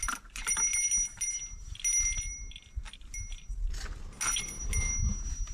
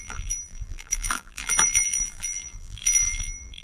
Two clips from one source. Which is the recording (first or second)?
first